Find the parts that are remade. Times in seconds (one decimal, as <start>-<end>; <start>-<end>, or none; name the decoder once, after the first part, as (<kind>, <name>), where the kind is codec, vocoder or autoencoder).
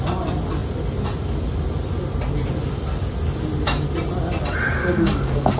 4.8-5.6 (codec, DAC)